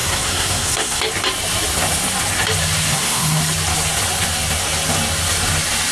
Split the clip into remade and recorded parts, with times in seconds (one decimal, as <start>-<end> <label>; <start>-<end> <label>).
0.0-1.0 remade; 1.0-2.9 recorded; 2.9-3.4 remade; 3.4-5.9 recorded